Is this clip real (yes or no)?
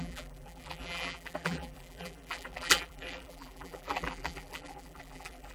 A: no